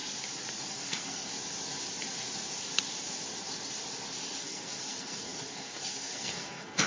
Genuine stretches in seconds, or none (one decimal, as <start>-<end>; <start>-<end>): 0.0-0.7; 1.3-4.4